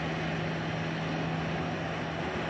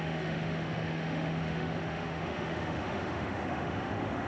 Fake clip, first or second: second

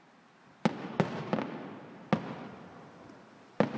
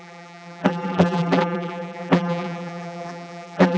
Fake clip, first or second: second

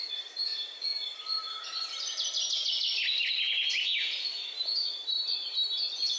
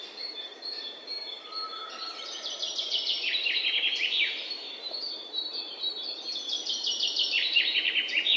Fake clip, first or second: second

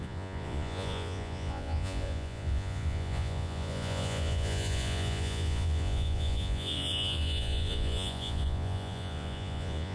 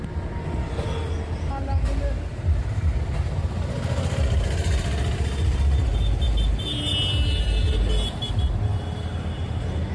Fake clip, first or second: first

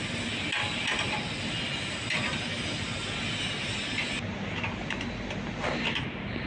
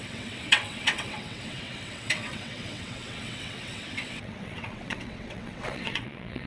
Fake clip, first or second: second